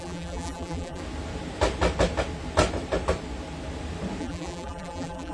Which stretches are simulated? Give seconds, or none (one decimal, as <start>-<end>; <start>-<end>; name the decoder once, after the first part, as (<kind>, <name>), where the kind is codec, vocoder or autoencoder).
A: 0.0-1.0 (vocoder, BigVGAN v2); 4.2-5.3